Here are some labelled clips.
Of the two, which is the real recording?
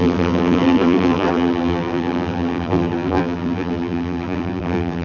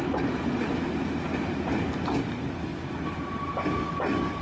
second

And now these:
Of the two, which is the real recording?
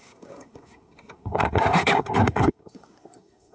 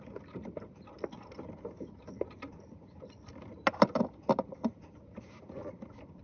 second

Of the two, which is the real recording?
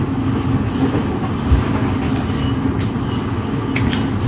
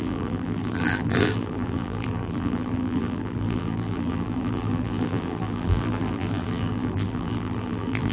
first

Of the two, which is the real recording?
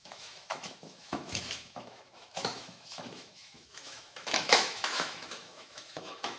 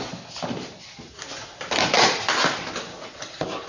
second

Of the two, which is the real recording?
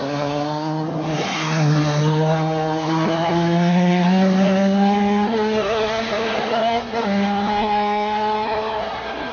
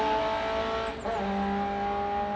second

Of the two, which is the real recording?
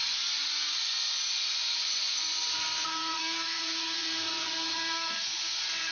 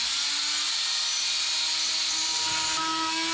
second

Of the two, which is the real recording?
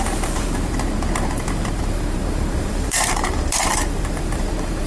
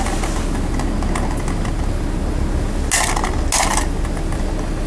second